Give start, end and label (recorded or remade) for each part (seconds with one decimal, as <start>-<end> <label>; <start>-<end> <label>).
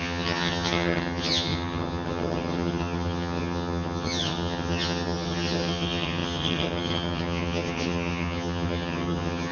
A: 0.0-9.5 remade